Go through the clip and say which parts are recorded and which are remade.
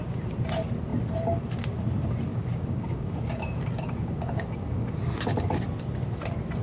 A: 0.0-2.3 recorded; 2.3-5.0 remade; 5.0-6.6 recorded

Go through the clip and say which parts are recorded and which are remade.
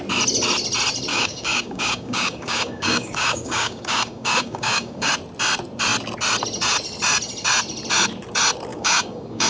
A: 0.0-1.1 recorded; 1.1-5.1 remade; 5.1-8.7 recorded; 8.7-9.5 remade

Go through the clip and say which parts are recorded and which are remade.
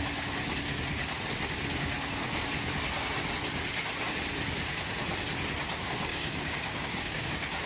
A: 0.0-6.1 recorded; 6.1-7.3 remade; 7.3-7.7 recorded